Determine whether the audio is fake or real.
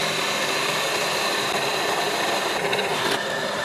real